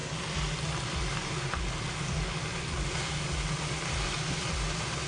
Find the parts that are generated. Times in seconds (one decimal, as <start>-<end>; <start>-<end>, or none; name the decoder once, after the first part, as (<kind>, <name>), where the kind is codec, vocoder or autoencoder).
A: none